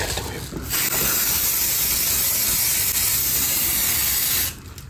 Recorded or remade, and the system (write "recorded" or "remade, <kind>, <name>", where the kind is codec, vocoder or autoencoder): recorded